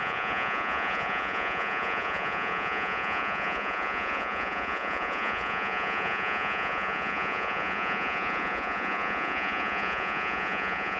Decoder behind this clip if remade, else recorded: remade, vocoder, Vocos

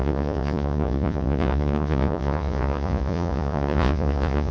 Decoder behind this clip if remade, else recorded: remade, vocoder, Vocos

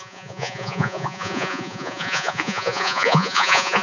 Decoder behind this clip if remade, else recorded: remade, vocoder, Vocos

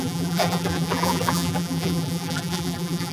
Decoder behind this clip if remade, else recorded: remade, vocoder, BigVGAN v2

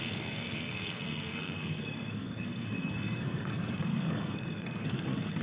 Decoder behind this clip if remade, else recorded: remade, codec, SNAC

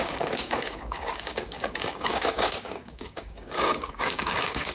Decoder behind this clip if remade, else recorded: remade, codec, DAC